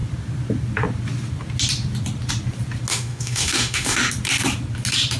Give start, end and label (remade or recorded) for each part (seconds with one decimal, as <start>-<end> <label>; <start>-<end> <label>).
0.0-2.9 recorded; 2.9-4.1 remade; 4.1-5.2 recorded